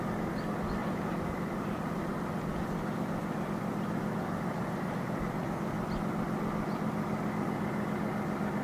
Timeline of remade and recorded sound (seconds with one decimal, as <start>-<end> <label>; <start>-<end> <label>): 0.0-0.8 recorded; 0.8-2.0 remade; 2.0-8.6 recorded